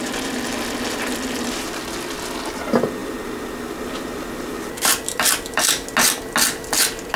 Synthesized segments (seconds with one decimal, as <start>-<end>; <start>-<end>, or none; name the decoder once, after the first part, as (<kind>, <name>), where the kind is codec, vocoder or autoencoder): none